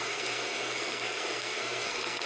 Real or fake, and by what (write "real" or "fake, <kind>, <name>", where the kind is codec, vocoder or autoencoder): fake, codec, SNAC